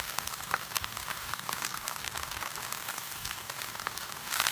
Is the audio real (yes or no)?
no